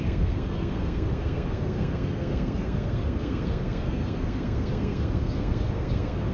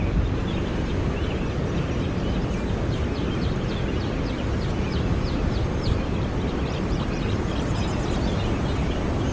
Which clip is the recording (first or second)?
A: second